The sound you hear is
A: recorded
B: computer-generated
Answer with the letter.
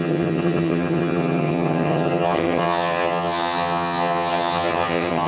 B